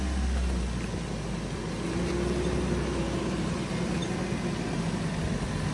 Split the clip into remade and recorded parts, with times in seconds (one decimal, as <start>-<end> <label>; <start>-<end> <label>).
0.0-5.7 recorded